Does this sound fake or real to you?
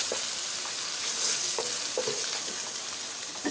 real